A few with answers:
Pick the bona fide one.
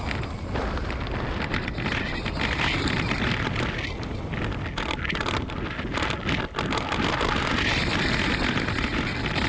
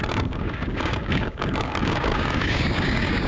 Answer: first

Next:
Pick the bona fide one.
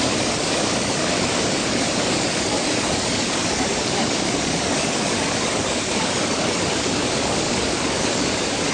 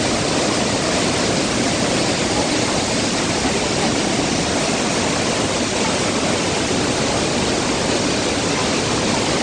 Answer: second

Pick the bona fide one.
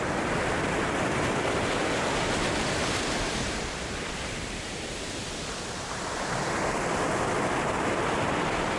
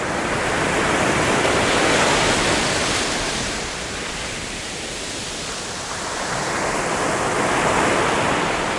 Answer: second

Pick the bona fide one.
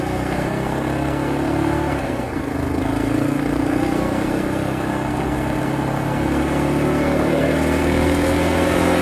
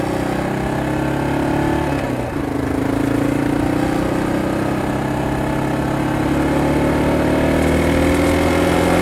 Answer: second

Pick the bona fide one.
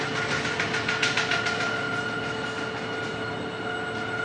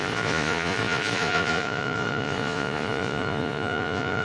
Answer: first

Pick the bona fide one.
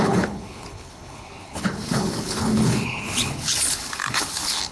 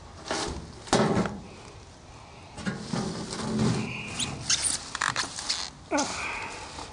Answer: second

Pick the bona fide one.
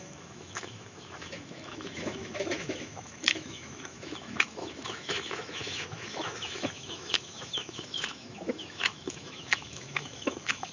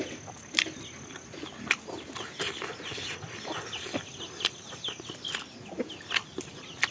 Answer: second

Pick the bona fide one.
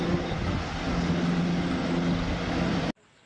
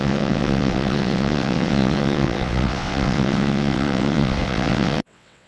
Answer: first